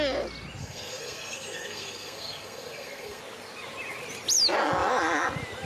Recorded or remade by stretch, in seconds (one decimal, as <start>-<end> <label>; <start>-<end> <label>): 0.0-0.6 recorded; 0.6-3.2 remade; 3.2-5.7 recorded